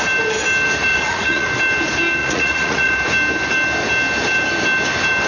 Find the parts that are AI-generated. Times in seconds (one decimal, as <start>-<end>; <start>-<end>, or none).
0.9-1.5; 2.2-2.9

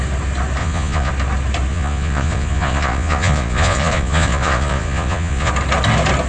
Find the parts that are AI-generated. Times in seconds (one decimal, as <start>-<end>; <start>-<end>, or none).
0.6-1.1; 1.7-5.5

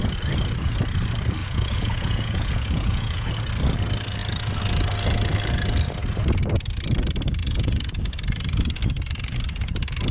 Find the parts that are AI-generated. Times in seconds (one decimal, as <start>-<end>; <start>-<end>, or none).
1.4-3.3; 7.4-8.0